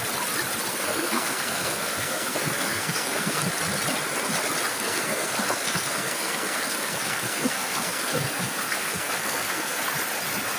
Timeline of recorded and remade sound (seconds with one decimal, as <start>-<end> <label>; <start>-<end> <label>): 0.0-0.7 recorded; 0.7-3.4 remade; 3.4-4.7 recorded; 4.7-9.8 remade; 9.8-10.6 recorded